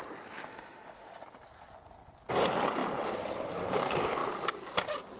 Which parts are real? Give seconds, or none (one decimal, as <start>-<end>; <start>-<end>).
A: 0.0-0.4; 1.2-5.2